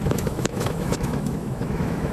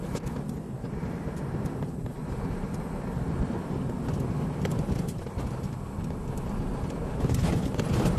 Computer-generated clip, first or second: first